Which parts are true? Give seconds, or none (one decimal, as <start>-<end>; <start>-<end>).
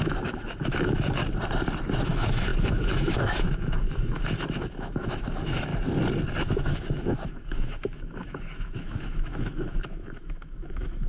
1.2-2.0; 5.7-6.4